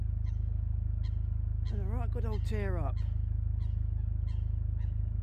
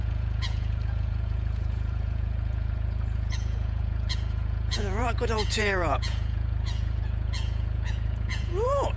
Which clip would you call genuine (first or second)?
first